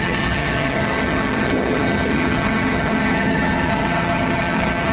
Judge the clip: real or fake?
fake